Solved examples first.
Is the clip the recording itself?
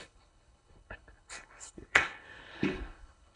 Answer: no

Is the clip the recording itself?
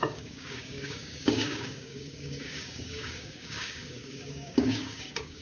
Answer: no